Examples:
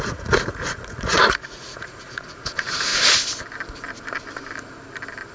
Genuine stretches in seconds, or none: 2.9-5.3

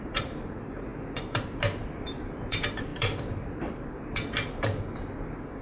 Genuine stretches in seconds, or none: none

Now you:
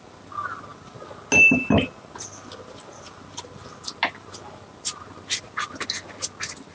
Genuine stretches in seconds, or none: 0.0-6.7

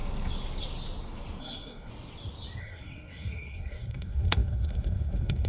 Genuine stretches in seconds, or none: 0.0-1.4; 1.9-2.6

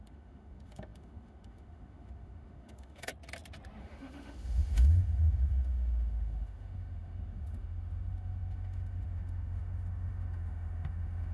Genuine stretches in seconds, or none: 3.1-3.8

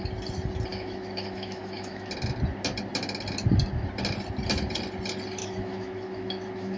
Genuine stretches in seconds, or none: 0.0-0.7; 2.1-5.4